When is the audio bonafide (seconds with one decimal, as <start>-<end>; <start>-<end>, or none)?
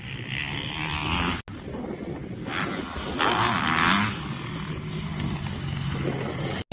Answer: 0.0-6.7